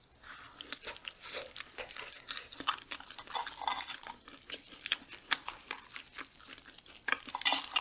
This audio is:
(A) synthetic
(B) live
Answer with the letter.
B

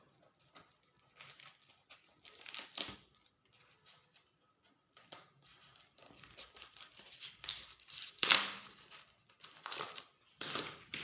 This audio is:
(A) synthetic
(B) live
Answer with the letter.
A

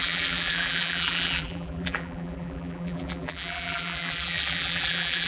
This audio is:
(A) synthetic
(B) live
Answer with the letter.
A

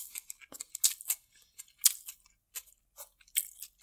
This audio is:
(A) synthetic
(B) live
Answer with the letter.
B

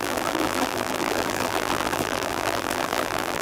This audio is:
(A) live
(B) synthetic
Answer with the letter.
B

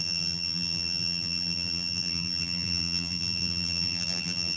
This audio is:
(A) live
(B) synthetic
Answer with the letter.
B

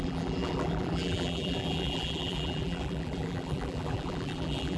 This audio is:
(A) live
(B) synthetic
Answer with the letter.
B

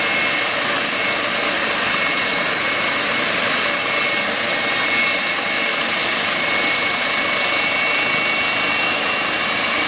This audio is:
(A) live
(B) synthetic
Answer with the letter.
A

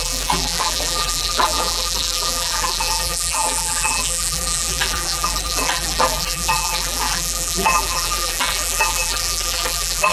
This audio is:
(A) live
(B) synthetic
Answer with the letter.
B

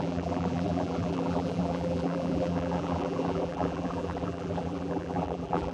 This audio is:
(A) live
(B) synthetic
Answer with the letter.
B